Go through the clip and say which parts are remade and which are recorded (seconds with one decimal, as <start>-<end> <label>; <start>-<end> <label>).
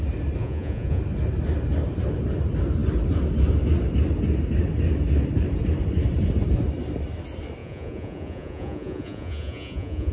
0.0-0.4 recorded; 0.4-1.0 remade; 1.0-7.6 recorded; 7.6-10.1 remade